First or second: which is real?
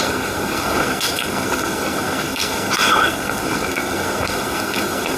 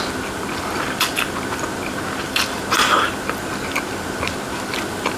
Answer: second